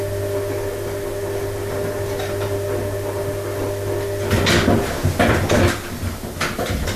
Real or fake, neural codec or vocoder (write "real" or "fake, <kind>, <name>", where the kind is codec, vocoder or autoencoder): real